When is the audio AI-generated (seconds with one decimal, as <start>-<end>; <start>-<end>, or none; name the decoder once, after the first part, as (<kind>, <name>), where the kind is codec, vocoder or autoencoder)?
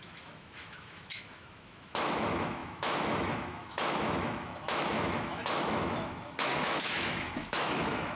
0.0-8.2 (autoencoder, DAC-VAE)